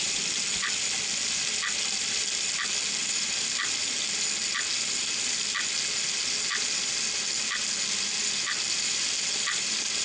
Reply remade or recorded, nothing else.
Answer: recorded